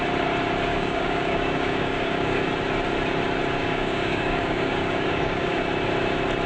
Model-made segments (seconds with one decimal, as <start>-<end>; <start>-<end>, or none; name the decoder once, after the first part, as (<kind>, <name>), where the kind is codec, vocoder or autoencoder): 0.7-2.5 (codec, DAC); 3.6-5.6